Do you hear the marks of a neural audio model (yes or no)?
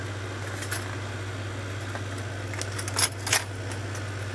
no